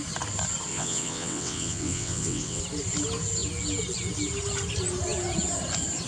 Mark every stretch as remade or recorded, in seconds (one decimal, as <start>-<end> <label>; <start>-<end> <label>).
0.0-0.7 recorded; 0.7-2.6 remade; 2.6-6.1 recorded